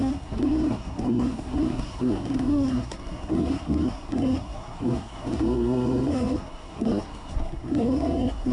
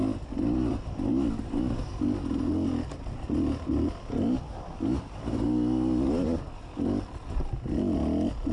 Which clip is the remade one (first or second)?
first